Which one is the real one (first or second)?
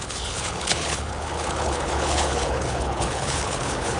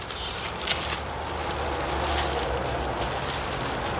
second